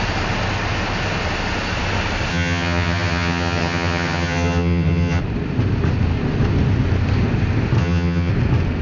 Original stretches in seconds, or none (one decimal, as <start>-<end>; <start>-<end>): 0.0-2.3; 5.2-7.8; 8.3-8.8